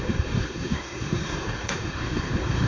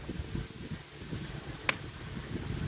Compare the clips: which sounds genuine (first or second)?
second